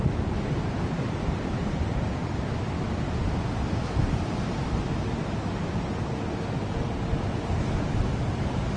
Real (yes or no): yes